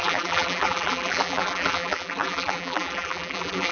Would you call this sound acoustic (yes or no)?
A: no